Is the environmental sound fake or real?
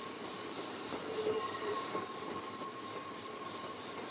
fake